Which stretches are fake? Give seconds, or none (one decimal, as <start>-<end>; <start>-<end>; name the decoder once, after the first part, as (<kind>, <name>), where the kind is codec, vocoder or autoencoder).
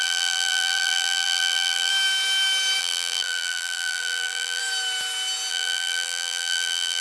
0.0-1.9 (vocoder, BigVGAN v2); 2.8-4.6; 5.5-7.0